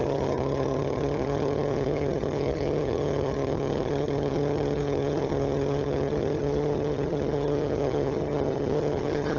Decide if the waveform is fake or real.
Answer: fake